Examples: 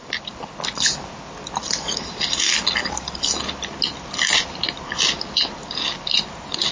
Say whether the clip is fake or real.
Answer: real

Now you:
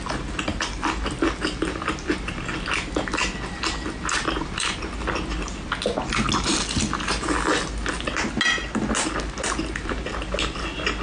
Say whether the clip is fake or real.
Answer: real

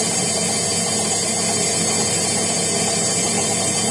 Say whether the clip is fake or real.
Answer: fake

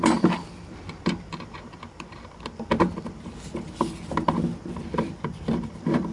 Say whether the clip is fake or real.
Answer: fake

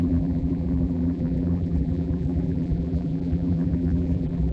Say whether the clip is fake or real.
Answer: fake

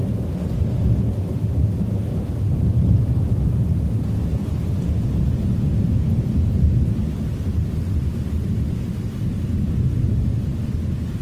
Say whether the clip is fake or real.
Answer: real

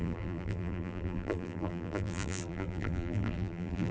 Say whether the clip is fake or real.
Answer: fake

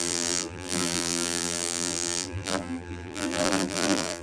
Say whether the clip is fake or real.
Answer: fake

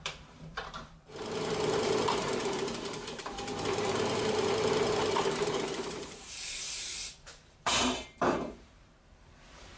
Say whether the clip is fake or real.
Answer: fake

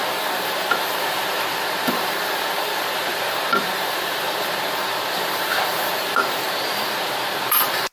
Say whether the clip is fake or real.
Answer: fake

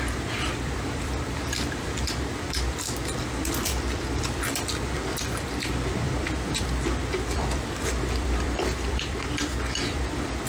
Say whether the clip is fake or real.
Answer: fake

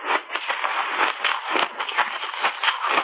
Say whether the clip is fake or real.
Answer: real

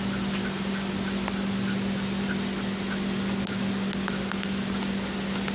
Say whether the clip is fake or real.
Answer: real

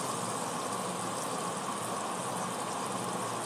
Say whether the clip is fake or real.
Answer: real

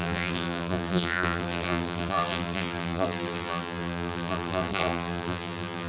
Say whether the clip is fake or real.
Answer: fake